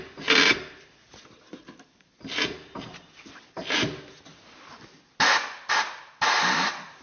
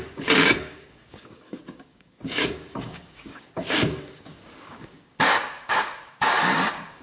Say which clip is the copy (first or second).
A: second